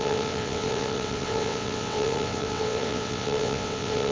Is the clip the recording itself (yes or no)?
no